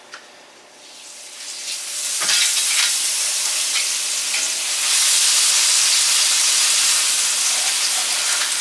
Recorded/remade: recorded